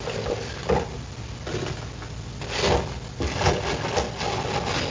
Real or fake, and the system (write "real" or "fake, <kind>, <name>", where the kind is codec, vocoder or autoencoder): real